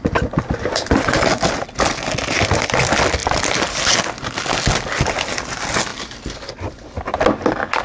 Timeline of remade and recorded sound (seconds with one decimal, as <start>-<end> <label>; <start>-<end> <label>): 0.0-7.8 recorded